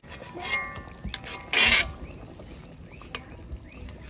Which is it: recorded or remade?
recorded